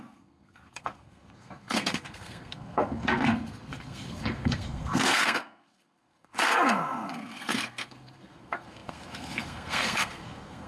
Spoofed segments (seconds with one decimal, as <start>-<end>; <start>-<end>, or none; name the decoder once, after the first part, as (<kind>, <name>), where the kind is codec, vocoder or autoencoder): 0.0-10.7 (codec, SNAC)